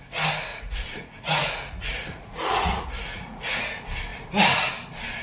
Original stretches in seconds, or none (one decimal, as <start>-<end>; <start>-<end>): 0.0-0.5; 3.6-5.2